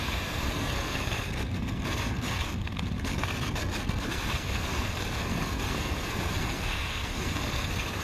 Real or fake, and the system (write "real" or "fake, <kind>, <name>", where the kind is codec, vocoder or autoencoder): fake, codec, SNAC